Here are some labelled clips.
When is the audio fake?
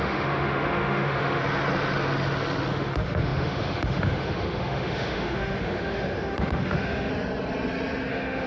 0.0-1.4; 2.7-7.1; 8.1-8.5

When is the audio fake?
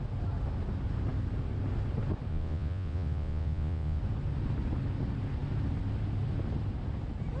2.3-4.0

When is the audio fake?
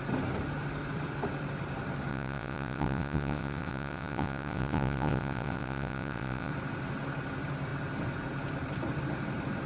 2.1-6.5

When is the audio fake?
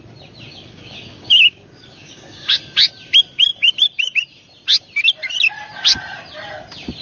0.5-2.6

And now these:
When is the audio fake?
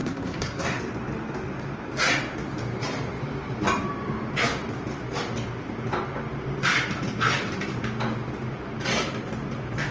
0.0-0.8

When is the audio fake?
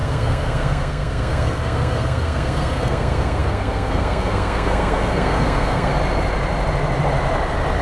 0.0-5.9